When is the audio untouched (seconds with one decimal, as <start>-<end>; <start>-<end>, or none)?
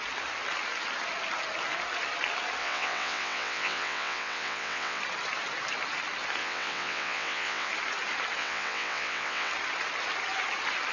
0.0-2.6; 5.0-6.4; 7.7-8.4; 9.5-10.9